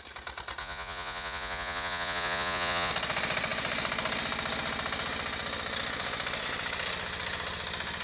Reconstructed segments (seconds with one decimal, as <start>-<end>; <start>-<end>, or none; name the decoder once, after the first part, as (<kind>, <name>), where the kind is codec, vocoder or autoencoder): 0.6-2.9 (vocoder, Vocos)